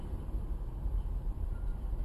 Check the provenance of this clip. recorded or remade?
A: remade